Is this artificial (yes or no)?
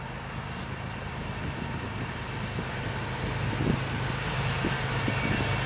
no